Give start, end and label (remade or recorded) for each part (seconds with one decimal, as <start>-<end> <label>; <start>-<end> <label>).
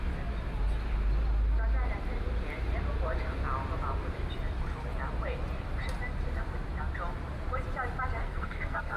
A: 0.0-8.2 recorded; 8.2-9.0 remade